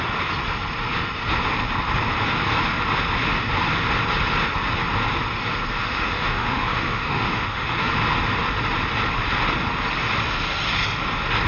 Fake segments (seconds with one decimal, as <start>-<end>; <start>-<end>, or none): 5.8-7.9